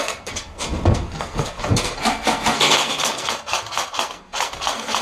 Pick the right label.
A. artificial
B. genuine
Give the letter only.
A